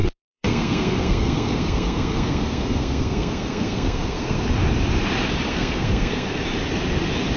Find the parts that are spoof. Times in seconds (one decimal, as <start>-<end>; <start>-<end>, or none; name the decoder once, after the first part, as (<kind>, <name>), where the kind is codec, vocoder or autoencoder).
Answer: 0.0-4.4 (codec, SNAC); 5.5-6.4